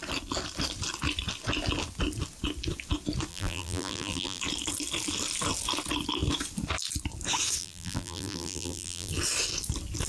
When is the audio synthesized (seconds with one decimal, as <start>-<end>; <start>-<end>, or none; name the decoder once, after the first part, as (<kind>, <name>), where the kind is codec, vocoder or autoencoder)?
3.3-4.4 (vocoder, BigVGAN v2); 7.6-9.1